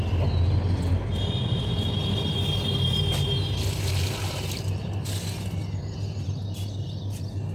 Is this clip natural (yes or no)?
yes